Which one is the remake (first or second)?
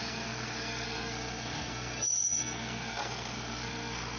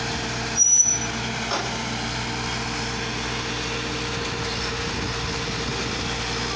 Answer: first